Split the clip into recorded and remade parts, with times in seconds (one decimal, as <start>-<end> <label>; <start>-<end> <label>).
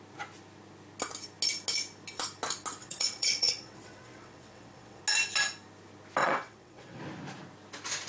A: 0.0-2.8 recorded; 2.8-5.0 remade; 5.0-6.2 recorded; 6.2-7.0 remade; 7.0-8.1 recorded